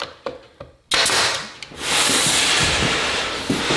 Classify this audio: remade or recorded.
recorded